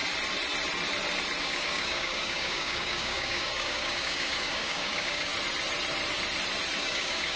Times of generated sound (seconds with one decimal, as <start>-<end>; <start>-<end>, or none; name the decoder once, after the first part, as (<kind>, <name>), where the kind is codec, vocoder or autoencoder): 1.4-5.3 (codec, DAC); 6.8-7.4